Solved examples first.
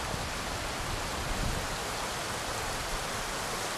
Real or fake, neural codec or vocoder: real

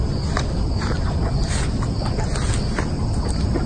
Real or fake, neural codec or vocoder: real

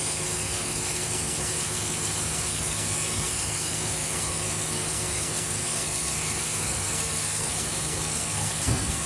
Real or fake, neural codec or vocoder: fake, codec, SNAC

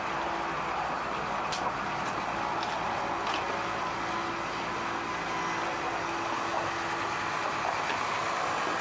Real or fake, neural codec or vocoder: real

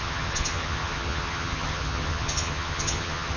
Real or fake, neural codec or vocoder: fake, vocoder, HiFi-GAN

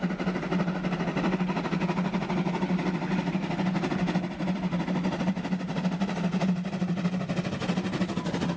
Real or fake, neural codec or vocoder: real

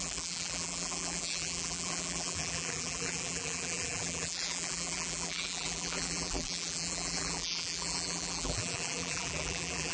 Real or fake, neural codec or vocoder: fake, vocoder, BigVGAN v2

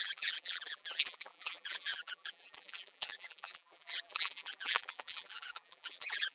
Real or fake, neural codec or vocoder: fake, vocoder, BigVGAN v2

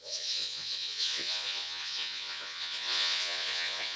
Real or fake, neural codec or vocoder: fake, vocoder, Vocos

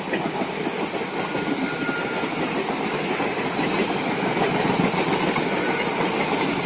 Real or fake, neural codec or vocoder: real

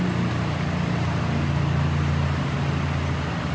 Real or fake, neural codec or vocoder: real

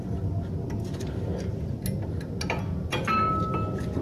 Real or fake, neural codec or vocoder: real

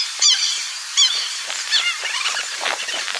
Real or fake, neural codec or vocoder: fake, vocoder, BigVGAN v2